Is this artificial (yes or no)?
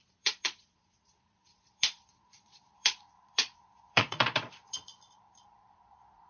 yes